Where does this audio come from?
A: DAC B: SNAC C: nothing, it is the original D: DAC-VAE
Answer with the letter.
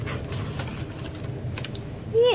C